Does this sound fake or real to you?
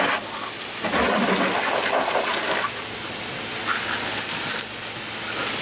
real